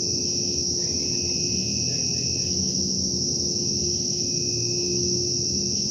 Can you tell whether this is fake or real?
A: real